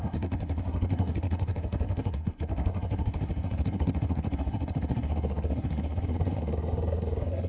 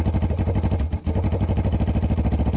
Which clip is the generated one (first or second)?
first